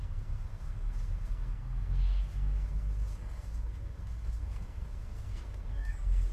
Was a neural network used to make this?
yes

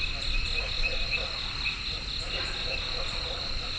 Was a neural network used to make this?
no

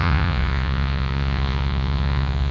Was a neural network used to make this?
yes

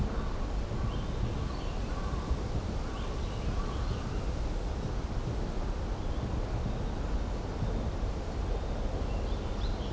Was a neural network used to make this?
no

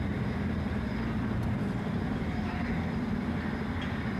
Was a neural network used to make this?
no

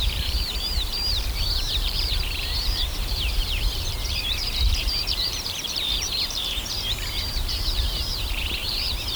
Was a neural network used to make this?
yes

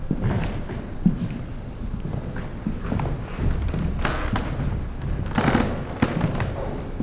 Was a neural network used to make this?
yes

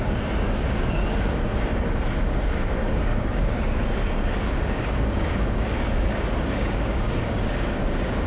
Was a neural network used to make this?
yes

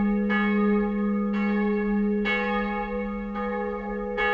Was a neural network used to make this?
no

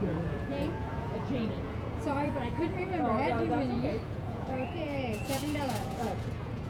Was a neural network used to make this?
yes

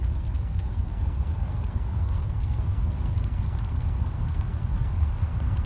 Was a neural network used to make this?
yes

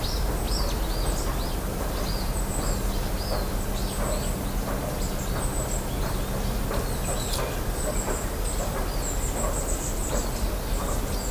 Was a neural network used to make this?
no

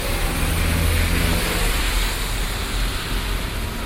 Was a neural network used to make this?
no